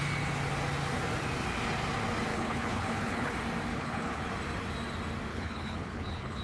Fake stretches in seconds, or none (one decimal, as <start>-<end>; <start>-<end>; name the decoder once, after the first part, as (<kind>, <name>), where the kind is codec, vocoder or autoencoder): 2.3-3.3 (codec, HILCodec); 3.7-4.3; 5.3-6.4